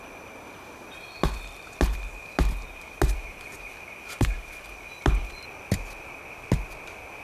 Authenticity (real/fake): real